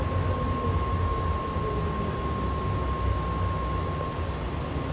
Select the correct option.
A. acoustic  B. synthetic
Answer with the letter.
A